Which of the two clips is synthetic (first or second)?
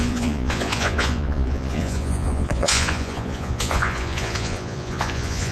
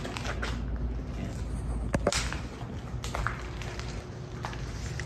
first